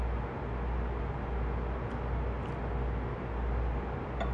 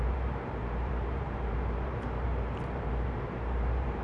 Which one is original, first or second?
first